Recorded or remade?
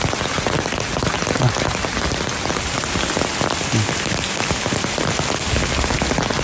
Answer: recorded